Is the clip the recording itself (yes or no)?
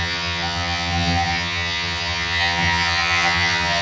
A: no